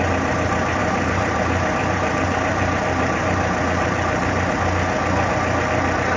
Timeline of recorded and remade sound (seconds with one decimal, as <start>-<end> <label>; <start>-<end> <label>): 0.0-0.8 recorded; 0.8-4.5 remade; 4.5-6.2 recorded